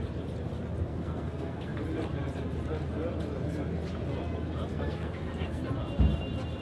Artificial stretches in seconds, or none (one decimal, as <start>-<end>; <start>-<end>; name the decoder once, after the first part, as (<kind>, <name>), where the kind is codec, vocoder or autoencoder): 0.9-1.8 (codec, SNAC); 4.7-5.6